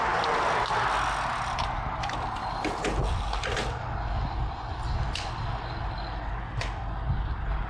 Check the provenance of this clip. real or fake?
real